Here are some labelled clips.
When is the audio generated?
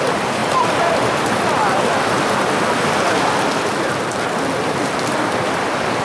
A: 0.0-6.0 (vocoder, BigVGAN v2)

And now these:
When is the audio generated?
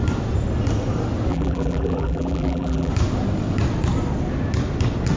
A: 1.3-2.9 (vocoder, BigVGAN v2)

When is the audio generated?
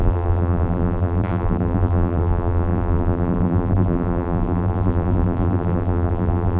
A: 0.0-6.6 (vocoder, BigVGAN v2)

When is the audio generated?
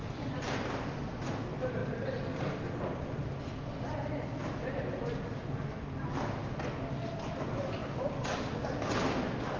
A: 0.0-1.3 (vocoder, BigVGAN v2)